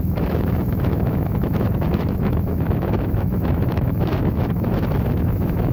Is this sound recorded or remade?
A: remade